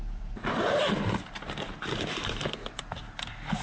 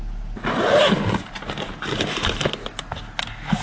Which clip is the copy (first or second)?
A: first